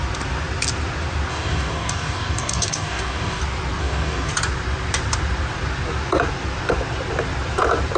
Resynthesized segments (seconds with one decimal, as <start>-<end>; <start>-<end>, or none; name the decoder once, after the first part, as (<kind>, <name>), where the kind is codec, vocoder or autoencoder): 1.3-3.4 (codec, DAC); 3.8-4.3